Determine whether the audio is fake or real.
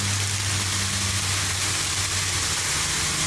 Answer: real